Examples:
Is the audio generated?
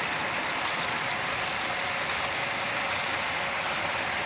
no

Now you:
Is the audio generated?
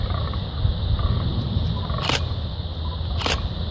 no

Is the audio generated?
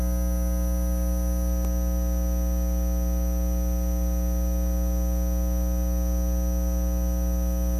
no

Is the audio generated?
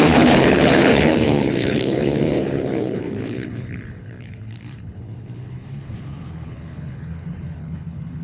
yes